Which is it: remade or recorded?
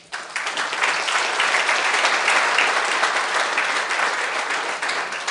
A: recorded